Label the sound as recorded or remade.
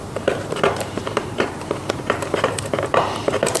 remade